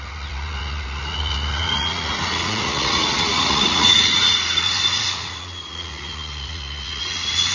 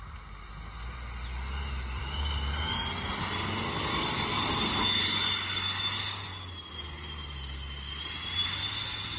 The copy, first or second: first